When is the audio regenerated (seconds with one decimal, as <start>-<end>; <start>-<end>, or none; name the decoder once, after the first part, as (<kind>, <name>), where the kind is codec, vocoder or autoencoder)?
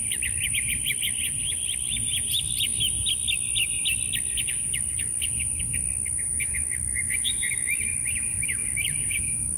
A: 8.6-9.2 (vocoder, BigVGAN v2)